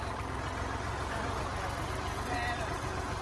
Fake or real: real